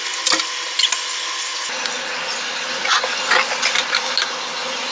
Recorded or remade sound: recorded